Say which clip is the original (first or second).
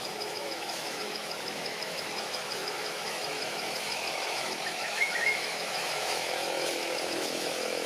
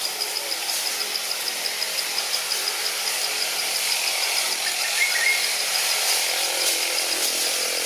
second